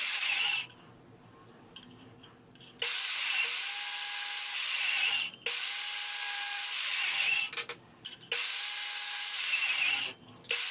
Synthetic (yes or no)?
no